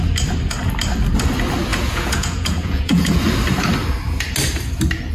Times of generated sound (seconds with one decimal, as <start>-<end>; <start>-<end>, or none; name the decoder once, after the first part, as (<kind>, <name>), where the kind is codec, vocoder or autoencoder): 1.7-3.2 (vocoder, Vocos)